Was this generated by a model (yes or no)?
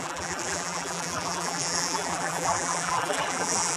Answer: yes